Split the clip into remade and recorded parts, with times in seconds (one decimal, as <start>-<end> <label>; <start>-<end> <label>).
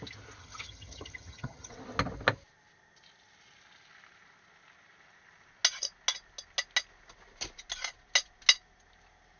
0.0-0.4 recorded; 0.4-1.7 remade; 1.7-9.4 recorded